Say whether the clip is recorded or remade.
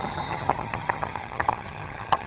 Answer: remade